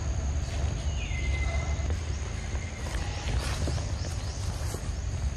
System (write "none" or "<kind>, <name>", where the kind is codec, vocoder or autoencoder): none